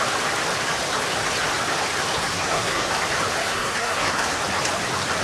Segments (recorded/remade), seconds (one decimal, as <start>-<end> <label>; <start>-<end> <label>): 0.0-2.2 recorded; 2.2-2.9 remade; 2.9-3.4 recorded; 3.4-4.4 remade; 4.4-5.2 recorded